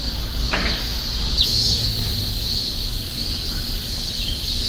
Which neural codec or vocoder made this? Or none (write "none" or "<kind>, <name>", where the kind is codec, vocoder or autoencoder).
codec, DAC